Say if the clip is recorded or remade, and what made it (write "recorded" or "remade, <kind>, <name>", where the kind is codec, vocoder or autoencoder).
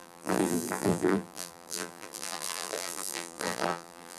remade, vocoder, BigVGAN v2